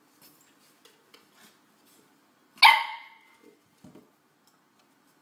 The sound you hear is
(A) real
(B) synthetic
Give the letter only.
A